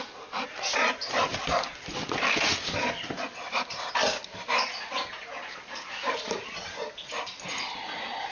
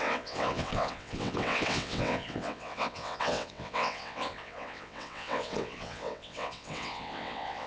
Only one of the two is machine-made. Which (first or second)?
second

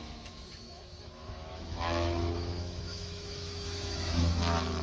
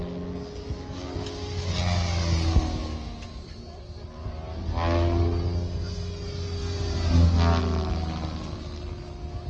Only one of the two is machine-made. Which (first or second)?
first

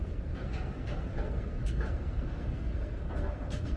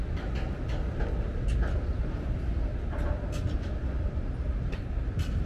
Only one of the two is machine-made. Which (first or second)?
first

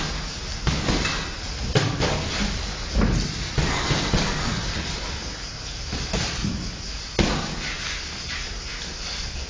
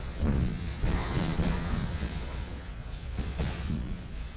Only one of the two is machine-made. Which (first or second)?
second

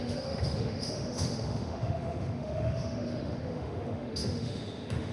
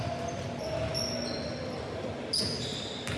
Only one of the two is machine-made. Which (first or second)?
first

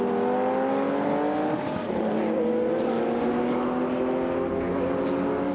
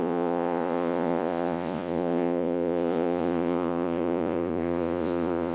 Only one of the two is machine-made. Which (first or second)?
second